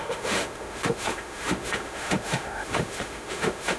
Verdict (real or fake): fake